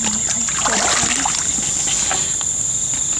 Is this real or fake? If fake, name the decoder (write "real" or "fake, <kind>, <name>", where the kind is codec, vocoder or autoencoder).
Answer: real